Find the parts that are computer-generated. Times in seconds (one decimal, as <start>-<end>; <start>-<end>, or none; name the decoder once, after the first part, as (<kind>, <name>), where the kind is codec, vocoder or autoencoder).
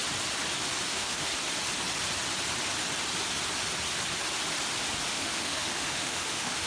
0.9-1.3 (autoencoder, DAC-VAE); 5.1-6.7